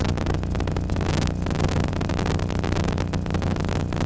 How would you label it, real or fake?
real